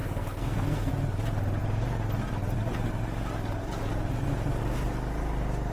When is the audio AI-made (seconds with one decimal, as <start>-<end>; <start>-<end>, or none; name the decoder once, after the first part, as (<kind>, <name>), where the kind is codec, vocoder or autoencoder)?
0.0-0.9 (codec, SNAC)